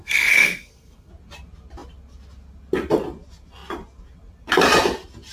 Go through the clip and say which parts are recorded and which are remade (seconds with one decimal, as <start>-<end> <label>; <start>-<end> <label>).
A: 0.0-1.1 remade; 1.1-5.3 recorded